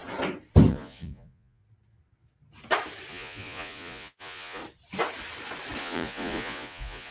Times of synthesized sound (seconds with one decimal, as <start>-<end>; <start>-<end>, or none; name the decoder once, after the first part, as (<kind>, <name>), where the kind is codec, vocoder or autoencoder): 0.7-1.6 (vocoder, Vocos); 3.1-4.6; 5.8-7.1